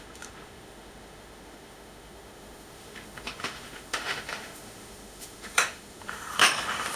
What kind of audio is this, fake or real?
fake